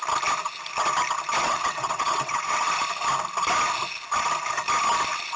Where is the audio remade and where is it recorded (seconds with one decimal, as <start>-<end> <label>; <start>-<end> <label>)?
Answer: 0.0-1.4 recorded; 1.4-2.6 remade; 2.6-5.4 recorded